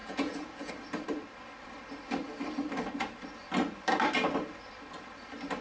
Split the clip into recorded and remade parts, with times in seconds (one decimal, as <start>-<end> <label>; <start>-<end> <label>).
0.0-0.7 remade; 0.7-5.6 recorded